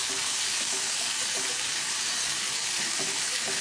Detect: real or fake fake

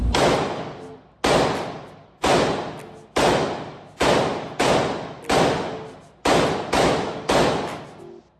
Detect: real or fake real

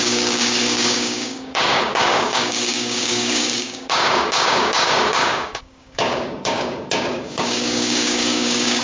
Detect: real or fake fake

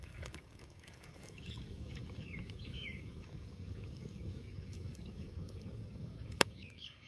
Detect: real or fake fake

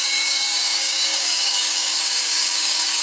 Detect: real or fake fake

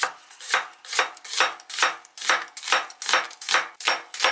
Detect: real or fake real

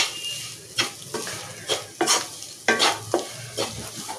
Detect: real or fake real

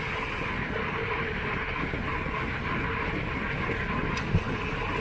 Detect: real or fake real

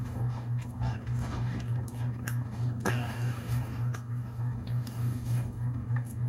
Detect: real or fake fake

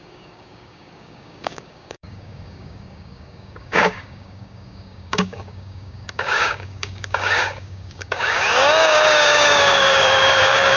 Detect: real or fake fake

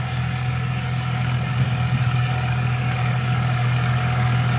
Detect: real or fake fake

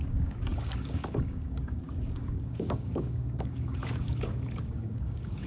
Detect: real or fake fake